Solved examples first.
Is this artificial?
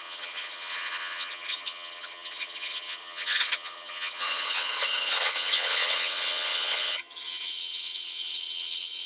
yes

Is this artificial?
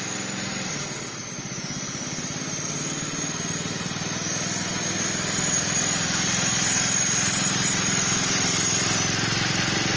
no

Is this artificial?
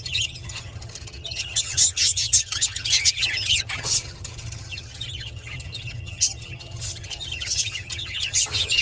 yes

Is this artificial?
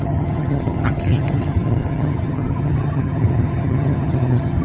yes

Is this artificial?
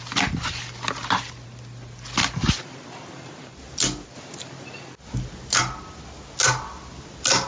no